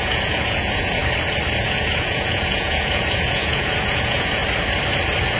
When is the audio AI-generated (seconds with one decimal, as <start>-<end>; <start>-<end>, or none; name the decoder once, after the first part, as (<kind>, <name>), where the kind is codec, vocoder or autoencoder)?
0.0-1.0 (vocoder, Vocos); 1.6-4.4

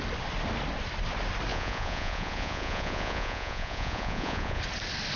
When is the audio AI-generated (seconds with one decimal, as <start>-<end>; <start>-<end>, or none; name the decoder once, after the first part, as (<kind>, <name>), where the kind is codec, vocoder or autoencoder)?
1.5-4.6 (vocoder, Vocos)

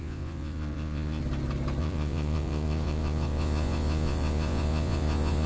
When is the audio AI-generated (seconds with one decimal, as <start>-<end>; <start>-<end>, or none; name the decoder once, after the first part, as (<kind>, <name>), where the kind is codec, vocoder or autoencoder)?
0.0-1.2 (vocoder, Vocos); 1.8-5.5

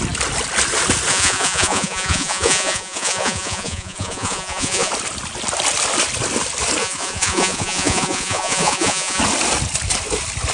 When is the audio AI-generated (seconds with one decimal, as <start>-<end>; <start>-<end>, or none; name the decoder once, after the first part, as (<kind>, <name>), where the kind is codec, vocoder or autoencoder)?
1.1-4.9 (vocoder, Vocos); 6.8-9.2